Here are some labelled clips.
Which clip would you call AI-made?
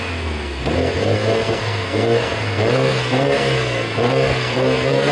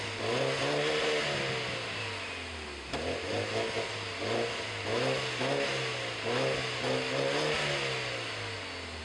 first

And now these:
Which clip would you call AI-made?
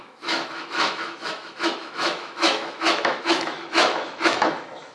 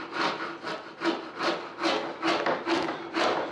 first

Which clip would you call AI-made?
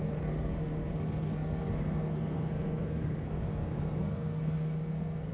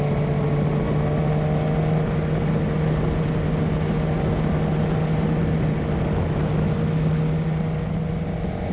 first